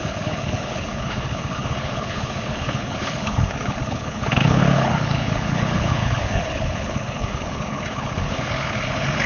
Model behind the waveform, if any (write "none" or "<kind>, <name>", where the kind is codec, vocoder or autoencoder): codec, HILCodec